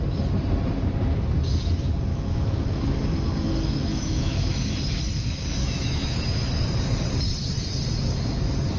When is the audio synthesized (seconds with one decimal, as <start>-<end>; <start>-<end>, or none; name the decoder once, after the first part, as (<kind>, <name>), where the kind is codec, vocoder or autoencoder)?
2.1-2.6 (autoencoder, DAC-VAE); 3.8-4.5; 5.6-6.5